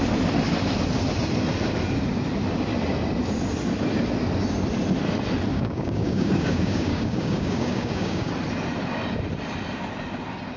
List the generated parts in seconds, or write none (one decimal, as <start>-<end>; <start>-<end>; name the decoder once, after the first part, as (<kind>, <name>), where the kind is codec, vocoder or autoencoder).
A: 5.5-8.3 (codec, DAC)